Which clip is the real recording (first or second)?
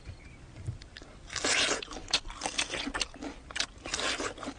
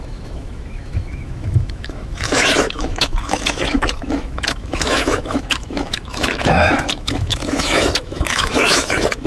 first